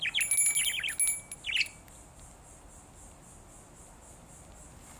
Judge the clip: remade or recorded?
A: recorded